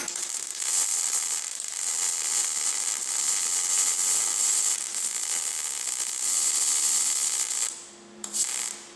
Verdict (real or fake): fake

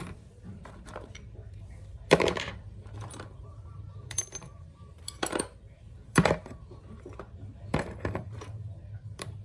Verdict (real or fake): fake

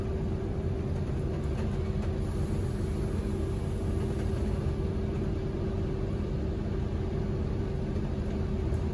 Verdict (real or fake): real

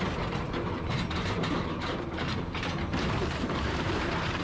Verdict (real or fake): fake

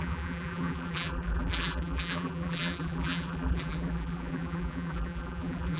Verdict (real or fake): fake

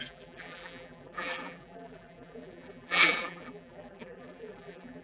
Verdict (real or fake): fake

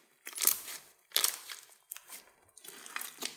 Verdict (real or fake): fake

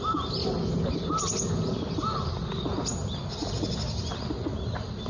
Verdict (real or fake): real